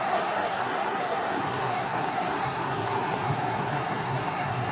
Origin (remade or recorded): remade